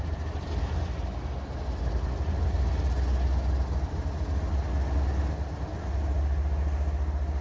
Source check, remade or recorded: recorded